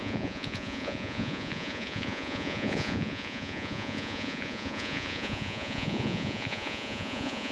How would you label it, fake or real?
fake